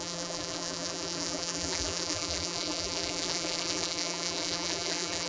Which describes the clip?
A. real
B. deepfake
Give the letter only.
B